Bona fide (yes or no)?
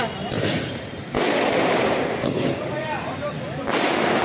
yes